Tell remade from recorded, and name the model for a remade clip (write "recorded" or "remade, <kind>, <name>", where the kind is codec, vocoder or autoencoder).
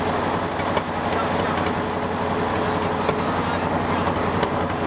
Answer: recorded